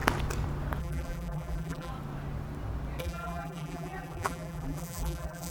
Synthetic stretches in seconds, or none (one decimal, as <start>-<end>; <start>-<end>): 0.8-1.9; 3.0-5.5